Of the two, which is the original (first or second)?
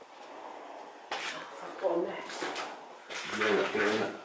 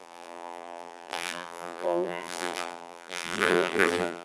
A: first